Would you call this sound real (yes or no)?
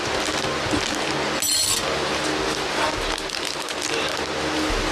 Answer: yes